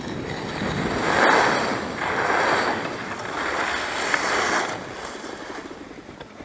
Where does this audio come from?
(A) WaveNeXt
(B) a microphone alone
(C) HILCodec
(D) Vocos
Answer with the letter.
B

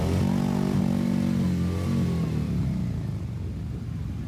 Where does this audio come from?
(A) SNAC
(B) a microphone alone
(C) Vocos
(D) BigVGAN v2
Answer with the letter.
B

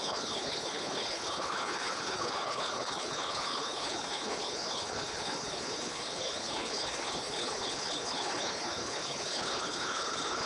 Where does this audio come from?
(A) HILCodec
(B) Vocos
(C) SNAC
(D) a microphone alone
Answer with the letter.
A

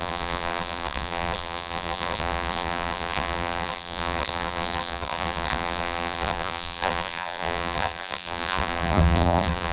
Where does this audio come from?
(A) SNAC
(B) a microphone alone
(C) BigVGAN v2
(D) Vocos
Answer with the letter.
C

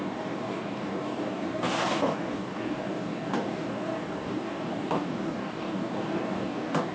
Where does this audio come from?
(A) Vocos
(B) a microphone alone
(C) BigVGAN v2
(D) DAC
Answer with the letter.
D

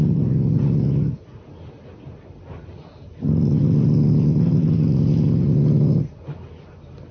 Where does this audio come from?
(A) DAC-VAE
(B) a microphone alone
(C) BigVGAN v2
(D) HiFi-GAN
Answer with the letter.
B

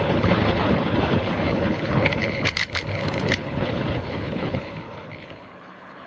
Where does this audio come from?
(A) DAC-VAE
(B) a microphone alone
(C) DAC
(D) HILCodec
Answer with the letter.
D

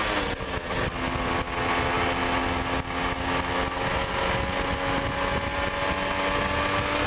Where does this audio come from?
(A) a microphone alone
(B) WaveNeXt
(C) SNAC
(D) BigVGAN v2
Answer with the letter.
A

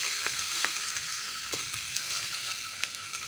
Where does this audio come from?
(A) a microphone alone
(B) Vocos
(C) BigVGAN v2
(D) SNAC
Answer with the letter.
D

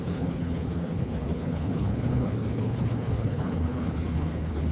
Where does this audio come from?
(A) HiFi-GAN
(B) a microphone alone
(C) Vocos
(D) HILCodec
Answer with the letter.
D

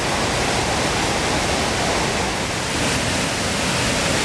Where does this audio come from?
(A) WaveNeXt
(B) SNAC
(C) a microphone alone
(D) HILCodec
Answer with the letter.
C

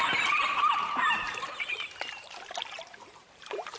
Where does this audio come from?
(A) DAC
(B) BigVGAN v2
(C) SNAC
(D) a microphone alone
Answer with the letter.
B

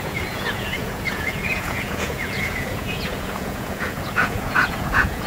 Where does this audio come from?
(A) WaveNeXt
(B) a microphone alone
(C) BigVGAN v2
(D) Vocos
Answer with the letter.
D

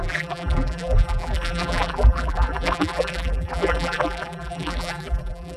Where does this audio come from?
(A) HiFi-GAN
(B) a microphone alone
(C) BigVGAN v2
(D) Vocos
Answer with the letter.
C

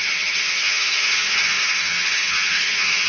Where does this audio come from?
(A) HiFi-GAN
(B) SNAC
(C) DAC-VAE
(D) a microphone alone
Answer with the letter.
A